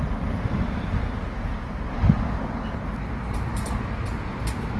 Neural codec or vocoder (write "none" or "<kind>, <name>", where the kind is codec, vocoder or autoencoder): none